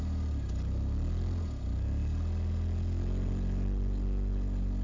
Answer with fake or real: real